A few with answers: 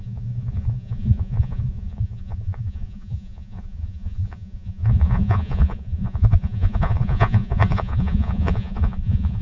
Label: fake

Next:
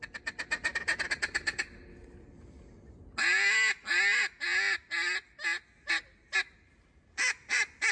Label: real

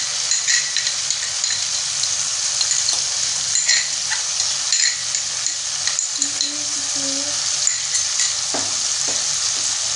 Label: real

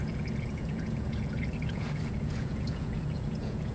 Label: fake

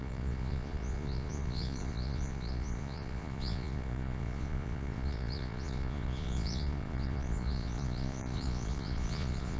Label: fake